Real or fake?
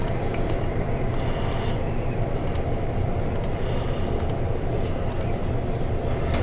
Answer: real